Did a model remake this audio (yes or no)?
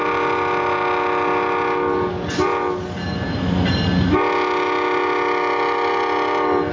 no